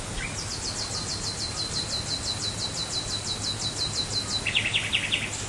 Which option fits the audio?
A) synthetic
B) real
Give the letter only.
B